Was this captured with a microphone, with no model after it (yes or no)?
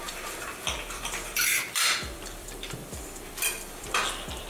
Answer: no